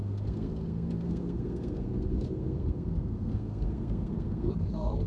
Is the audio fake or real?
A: fake